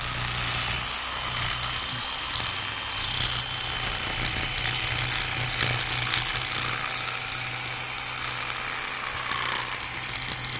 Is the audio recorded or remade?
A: recorded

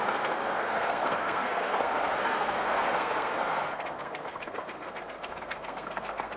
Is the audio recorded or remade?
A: remade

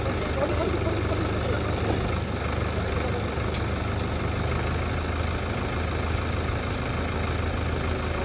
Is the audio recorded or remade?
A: recorded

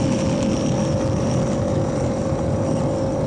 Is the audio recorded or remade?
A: recorded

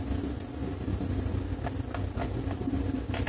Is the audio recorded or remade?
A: recorded